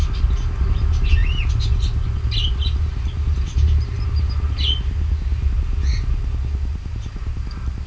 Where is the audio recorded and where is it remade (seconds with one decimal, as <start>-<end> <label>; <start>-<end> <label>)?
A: 0.0-7.9 recorded